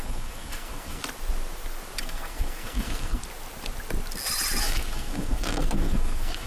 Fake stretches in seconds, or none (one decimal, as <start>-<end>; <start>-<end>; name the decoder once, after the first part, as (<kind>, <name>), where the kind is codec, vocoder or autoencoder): 0.0-1.0 (codec, SNAC); 2.0-3.2; 4.6-6.5